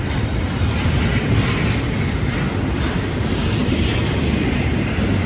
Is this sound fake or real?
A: real